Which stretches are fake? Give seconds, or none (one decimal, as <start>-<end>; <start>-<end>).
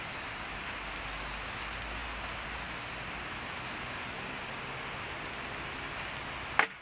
none